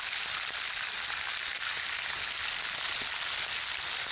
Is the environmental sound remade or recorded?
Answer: recorded